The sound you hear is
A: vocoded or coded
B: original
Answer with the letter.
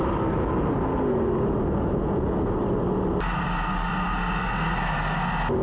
B